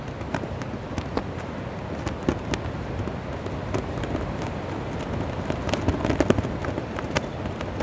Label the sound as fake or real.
real